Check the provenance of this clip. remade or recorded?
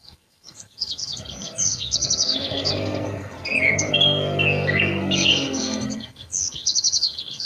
remade